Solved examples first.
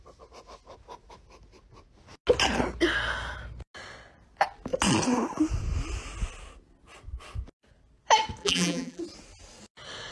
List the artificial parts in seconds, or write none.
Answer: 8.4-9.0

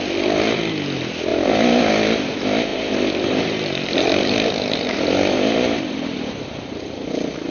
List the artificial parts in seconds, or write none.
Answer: 1.3-1.9; 2.7-7.5

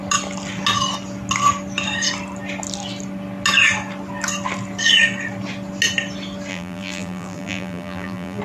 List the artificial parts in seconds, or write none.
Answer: 6.5-8.4

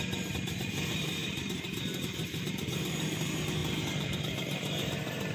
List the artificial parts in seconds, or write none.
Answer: 0.0-3.6; 4.2-5.3

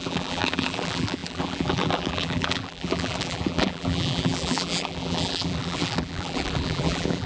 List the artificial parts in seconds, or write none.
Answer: 0.0-7.3

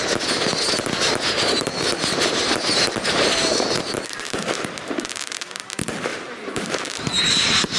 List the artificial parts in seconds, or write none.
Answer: 2.4-4.4; 6.1-7.3

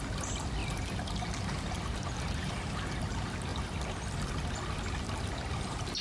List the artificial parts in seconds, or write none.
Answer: 0.6-2.5

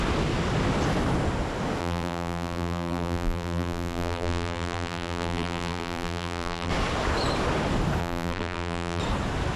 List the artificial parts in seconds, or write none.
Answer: 1.8-6.7; 8.0-9.0